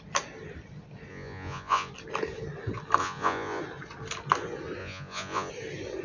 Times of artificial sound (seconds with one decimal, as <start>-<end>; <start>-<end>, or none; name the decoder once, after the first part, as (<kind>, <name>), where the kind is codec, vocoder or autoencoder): 1.1-1.9 (vocoder, Vocos); 3.0-3.6; 4.8-5.5